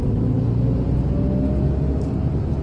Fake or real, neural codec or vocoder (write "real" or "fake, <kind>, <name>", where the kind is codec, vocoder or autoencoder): real